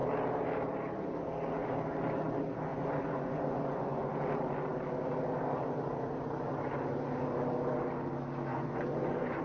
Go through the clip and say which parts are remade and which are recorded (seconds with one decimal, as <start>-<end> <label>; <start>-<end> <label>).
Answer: 0.0-2.7 recorded; 2.7-4.1 remade; 4.1-8.5 recorded; 8.5-9.4 remade